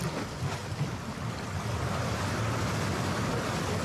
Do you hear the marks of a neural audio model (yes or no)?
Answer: no